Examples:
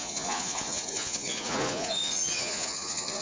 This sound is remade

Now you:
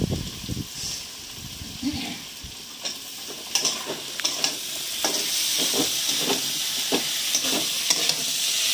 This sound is recorded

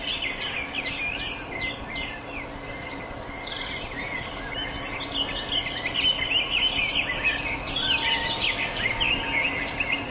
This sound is recorded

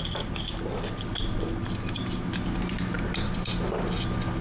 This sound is recorded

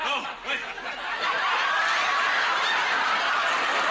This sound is recorded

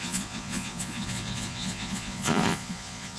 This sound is remade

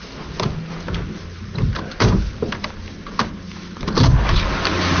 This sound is recorded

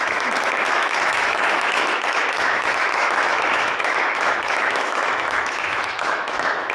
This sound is remade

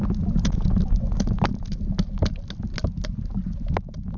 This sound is recorded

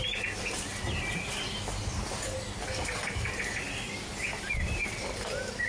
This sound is recorded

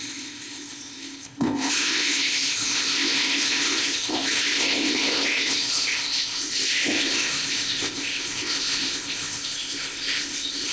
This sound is remade